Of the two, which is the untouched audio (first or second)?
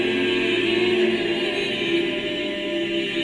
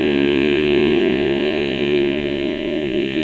first